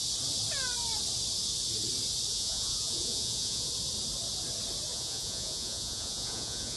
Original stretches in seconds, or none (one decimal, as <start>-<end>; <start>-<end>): 0.0-2.3; 3.7-4.9